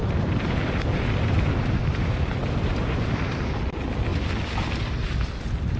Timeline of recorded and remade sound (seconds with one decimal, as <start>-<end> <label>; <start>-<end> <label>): 0.0-3.5 remade; 3.5-5.8 recorded